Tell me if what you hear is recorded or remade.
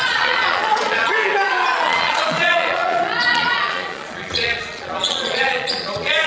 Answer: remade